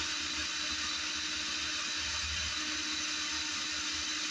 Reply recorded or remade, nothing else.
remade